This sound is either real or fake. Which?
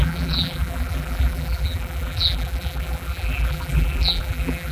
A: fake